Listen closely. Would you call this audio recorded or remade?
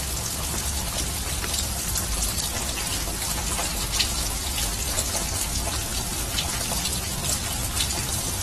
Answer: recorded